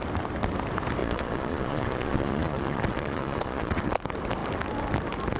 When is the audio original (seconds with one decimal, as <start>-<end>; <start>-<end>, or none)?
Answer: 0.0-1.0; 4.0-5.4